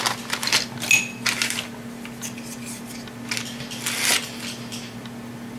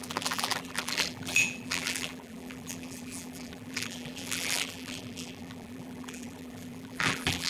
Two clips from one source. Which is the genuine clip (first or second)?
first